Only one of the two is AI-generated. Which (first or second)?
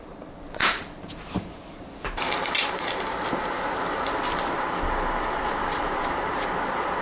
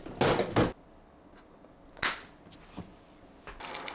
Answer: first